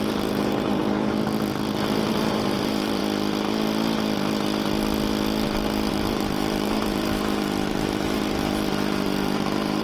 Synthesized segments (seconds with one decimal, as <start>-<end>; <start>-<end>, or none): 0.0-0.8; 2.1-3.0; 5.9-9.8